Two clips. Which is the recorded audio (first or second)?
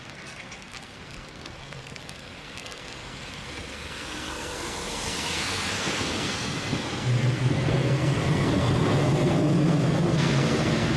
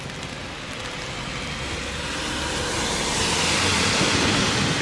second